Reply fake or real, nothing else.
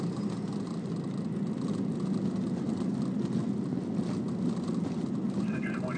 real